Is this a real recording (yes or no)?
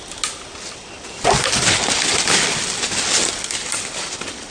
yes